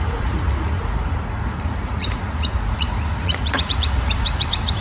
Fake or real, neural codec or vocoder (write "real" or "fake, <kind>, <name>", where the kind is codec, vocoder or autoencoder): fake, vocoder, Vocos